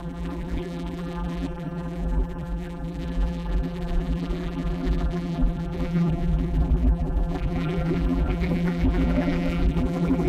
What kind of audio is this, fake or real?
fake